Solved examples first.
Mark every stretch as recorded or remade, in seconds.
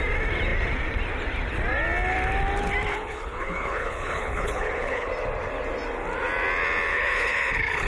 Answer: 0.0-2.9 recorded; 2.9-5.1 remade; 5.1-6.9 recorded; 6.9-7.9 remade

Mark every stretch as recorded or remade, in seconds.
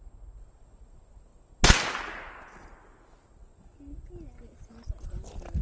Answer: 0.0-5.6 recorded